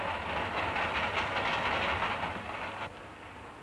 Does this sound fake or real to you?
real